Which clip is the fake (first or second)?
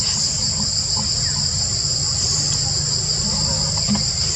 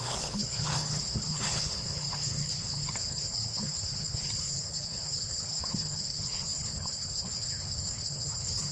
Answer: second